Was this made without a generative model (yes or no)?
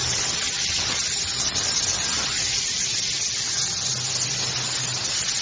yes